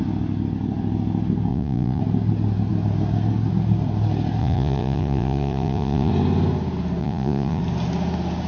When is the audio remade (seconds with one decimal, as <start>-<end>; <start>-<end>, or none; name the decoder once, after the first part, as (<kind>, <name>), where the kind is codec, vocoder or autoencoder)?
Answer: 1.5-2.0 (vocoder, Vocos); 4.4-6.1; 7.0-7.6